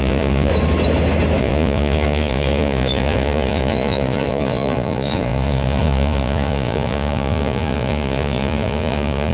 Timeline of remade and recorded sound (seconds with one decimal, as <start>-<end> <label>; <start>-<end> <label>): 0.0-0.5 remade; 0.5-1.4 recorded; 1.4-9.3 remade

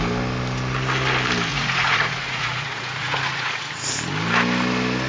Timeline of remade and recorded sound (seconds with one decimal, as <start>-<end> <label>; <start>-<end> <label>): 0.0-1.5 recorded; 1.5-3.7 remade; 3.7-5.1 recorded